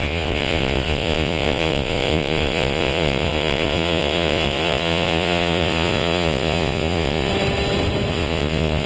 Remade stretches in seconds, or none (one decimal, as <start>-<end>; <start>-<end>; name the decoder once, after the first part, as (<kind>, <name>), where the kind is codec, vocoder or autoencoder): 0.0-7.3 (vocoder, Vocos); 8.1-8.9